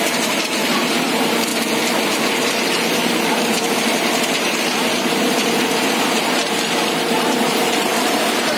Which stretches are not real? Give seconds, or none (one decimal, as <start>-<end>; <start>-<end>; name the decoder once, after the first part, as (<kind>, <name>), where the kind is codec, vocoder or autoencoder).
0.0-1.5 (vocoder, BigVGAN v2); 2.3-8.6